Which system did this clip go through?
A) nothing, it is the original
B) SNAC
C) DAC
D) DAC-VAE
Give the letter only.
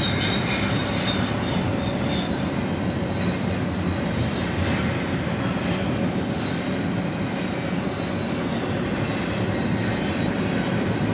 A